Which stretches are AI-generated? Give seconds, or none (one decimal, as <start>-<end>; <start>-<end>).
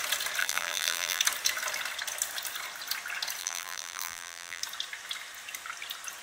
0.4-1.2; 3.4-4.6